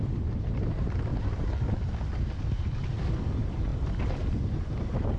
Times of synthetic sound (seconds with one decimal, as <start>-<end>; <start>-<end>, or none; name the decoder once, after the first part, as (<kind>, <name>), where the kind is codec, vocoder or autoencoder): 0.0-1.1 (vocoder, BigVGAN v2); 3.2-3.7; 4.4-5.2